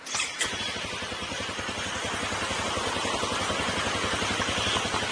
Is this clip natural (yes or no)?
yes